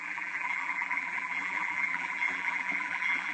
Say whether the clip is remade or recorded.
remade